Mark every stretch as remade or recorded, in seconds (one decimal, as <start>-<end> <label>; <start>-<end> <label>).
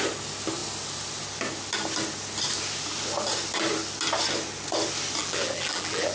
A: 0.0-5.2 recorded; 5.2-6.1 remade